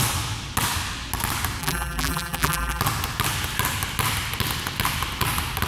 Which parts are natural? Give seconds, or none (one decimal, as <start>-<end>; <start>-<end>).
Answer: 0.0-1.6; 2.8-5.7